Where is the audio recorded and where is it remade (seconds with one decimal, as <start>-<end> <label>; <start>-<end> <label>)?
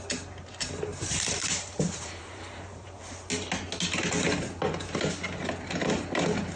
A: 0.0-0.9 recorded; 0.9-3.0 remade; 3.0-6.6 recorded